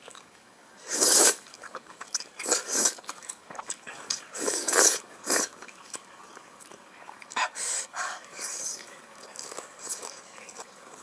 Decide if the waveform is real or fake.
fake